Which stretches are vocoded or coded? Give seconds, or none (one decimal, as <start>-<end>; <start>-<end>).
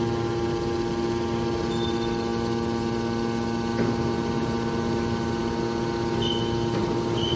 none